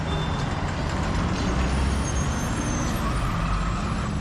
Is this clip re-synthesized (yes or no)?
no